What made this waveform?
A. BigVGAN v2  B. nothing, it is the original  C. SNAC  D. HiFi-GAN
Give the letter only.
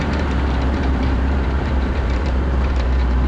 A